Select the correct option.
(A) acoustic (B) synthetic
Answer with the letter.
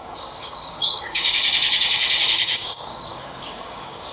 B